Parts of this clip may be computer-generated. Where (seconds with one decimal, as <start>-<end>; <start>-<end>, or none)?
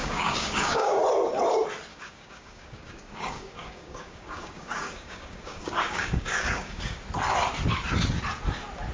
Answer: 0.0-1.0; 1.9-7.0